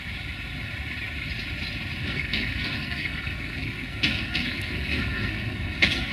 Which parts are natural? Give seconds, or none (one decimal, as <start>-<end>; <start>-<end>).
0.0-2.0